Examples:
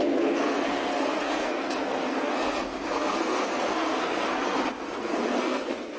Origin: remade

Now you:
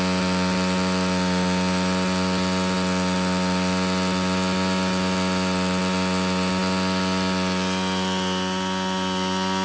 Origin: recorded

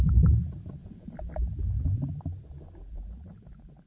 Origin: recorded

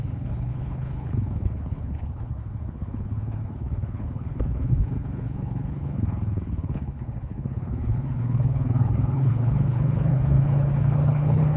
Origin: remade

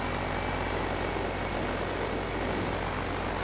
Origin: recorded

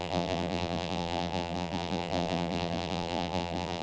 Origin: remade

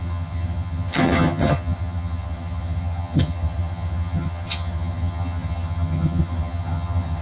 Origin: remade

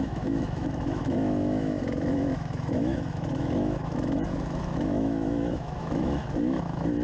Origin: remade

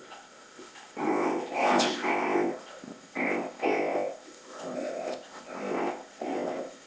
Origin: remade